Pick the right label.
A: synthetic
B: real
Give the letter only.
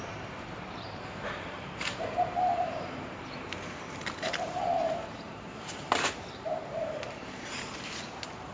A